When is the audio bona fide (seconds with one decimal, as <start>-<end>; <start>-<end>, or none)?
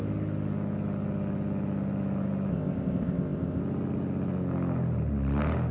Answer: 0.0-2.5; 3.6-5.7